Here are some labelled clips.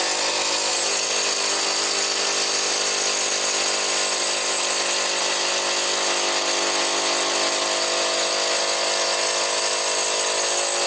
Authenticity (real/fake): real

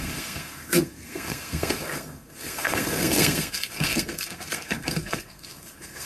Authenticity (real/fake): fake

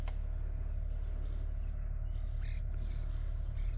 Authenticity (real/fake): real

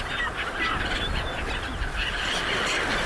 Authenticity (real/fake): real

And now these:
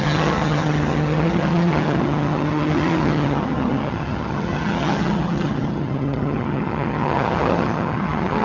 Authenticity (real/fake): fake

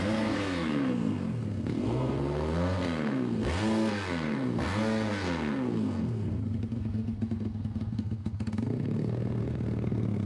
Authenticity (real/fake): fake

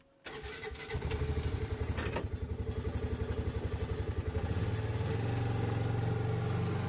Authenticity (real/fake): real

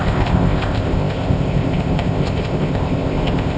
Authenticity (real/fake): fake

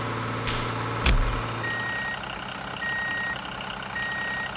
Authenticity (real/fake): real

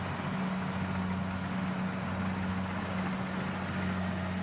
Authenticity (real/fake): real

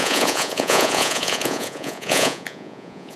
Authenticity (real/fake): fake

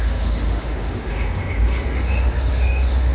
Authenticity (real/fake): fake